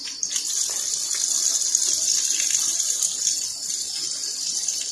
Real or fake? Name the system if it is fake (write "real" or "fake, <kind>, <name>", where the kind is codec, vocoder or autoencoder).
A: real